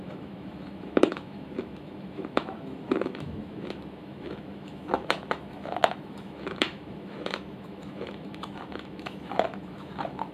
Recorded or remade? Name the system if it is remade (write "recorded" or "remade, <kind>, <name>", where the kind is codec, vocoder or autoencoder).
remade, autoencoder, DAC-VAE